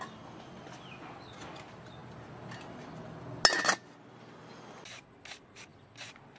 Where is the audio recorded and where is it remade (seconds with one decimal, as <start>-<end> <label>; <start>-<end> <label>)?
0.0-6.4 recorded